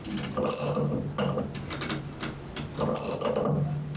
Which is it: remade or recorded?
recorded